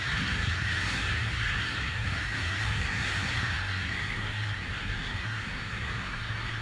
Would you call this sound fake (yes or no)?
yes